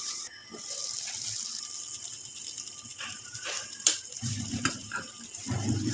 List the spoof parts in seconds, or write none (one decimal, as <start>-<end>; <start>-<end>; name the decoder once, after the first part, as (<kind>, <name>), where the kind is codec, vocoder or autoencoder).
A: 2.9-5.5 (vocoder, BigVGAN v2)